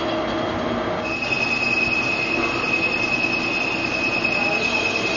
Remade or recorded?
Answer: recorded